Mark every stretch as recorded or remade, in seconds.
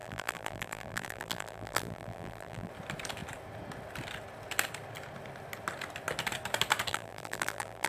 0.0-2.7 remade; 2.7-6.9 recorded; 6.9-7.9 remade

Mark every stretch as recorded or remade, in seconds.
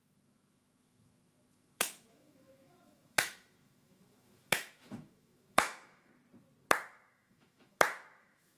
0.0-6.1 remade; 6.1-6.9 recorded; 6.9-8.6 remade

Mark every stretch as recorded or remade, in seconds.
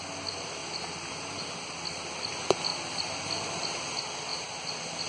0.0-0.6 recorded; 0.6-1.4 remade; 1.4-2.7 recorded; 2.7-3.3 remade; 3.3-5.1 recorded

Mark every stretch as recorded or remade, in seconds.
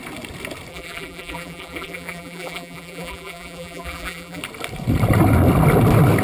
0.0-0.7 recorded; 0.7-4.4 remade; 4.4-6.2 recorded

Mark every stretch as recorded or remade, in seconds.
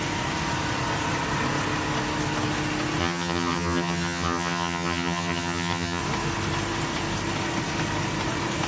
0.0-3.0 recorded; 3.0-6.0 remade; 6.0-8.7 recorded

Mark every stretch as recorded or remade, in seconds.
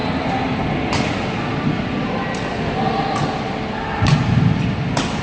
0.0-5.2 recorded